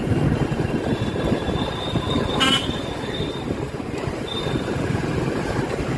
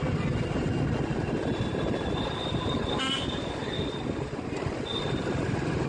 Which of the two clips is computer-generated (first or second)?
first